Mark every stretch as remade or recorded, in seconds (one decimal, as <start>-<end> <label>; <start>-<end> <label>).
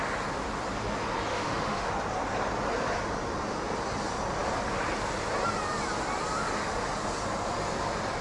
0.0-1.3 recorded; 1.3-1.9 remade; 1.9-8.2 recorded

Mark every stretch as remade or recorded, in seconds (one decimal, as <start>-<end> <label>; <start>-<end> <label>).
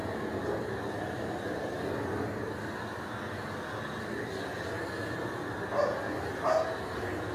0.0-1.8 remade; 1.8-7.3 recorded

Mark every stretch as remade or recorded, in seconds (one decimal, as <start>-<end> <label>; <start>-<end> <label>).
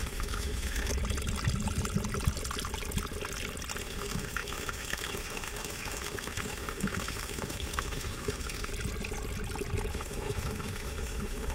0.0-0.9 remade; 0.9-3.8 recorded; 3.8-8.7 remade; 8.7-9.9 recorded; 9.9-11.5 remade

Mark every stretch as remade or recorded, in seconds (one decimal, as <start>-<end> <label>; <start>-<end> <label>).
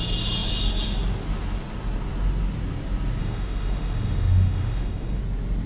0.0-3.2 recorded; 3.2-5.2 remade; 5.2-5.7 recorded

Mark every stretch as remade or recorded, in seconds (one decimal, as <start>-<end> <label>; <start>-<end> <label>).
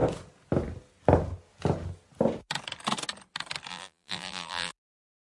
0.0-3.7 recorded; 3.7-4.7 remade; 4.7-5.2 recorded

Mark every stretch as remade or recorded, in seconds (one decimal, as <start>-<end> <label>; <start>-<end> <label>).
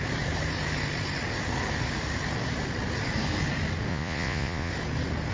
0.0-3.9 recorded; 3.9-4.7 remade; 4.7-5.3 recorded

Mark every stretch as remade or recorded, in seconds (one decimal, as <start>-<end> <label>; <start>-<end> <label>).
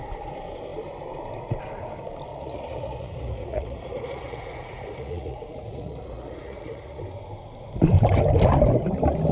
0.0-2.3 recorded; 2.3-7.0 remade; 7.0-9.3 recorded